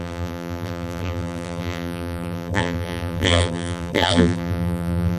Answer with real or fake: fake